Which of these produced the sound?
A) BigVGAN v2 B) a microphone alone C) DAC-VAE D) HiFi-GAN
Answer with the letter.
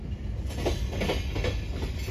B